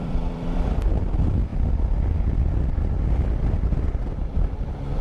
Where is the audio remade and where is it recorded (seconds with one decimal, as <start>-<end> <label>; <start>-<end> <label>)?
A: 0.0-5.0 remade